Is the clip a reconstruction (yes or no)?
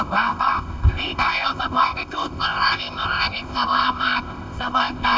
yes